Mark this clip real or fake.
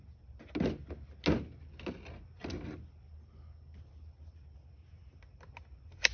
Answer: real